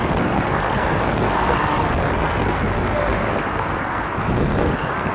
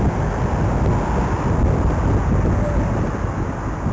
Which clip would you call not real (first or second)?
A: first